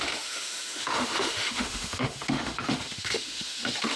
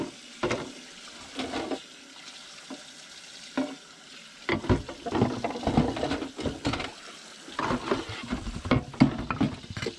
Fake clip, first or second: first